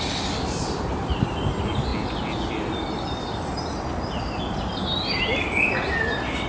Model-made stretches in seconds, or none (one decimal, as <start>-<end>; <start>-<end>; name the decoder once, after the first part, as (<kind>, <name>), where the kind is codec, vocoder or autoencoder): none